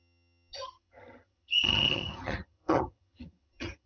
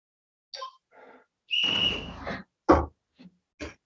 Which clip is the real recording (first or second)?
second